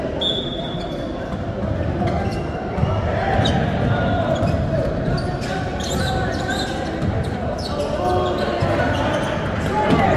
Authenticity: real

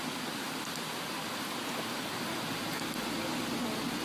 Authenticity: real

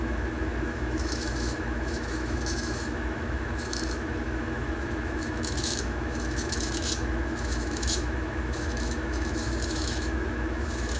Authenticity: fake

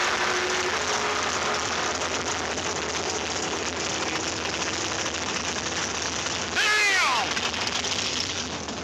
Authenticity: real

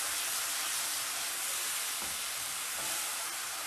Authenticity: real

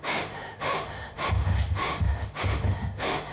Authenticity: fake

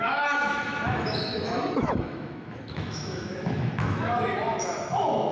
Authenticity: fake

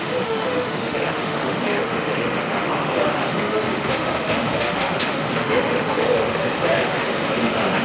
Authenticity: fake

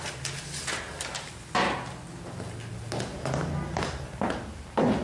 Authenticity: real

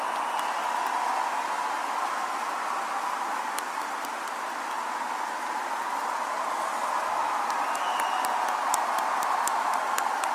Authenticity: real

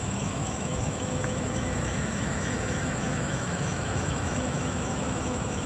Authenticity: fake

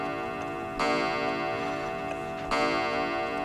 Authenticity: real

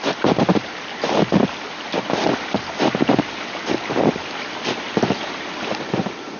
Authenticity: real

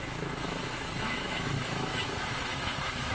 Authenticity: fake